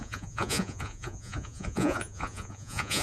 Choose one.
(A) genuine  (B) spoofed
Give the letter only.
B